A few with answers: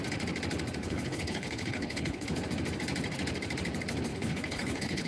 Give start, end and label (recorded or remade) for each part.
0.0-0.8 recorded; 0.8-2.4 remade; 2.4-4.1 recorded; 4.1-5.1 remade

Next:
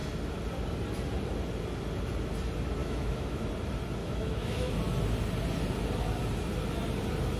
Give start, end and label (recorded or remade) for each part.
0.0-2.8 recorded; 2.8-3.5 remade; 3.5-4.0 recorded; 4.0-4.7 remade; 4.7-7.4 recorded